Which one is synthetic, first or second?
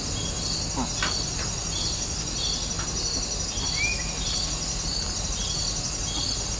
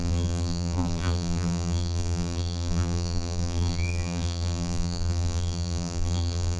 second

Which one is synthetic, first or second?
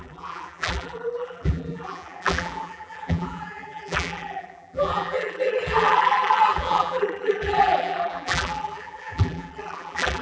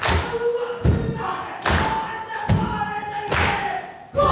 first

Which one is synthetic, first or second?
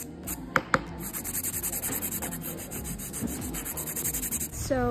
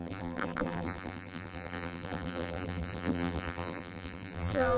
second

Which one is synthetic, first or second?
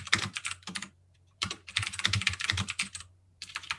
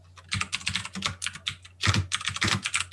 first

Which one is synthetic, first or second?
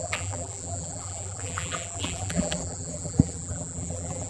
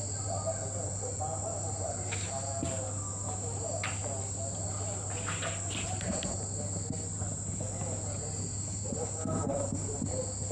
first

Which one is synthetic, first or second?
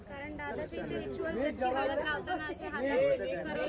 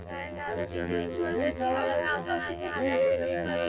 second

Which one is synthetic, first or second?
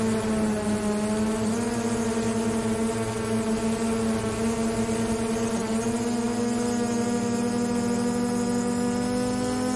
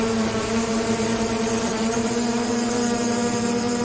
second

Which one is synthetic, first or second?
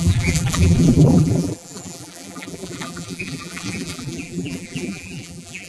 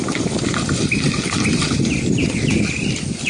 first